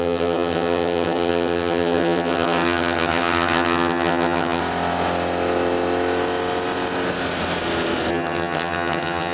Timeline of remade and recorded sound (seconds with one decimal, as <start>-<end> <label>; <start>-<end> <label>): 0.0-4.6 remade; 4.6-8.1 recorded; 8.1-9.3 remade